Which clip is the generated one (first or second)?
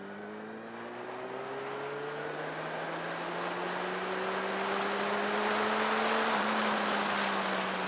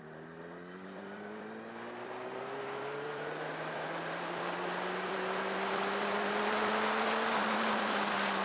second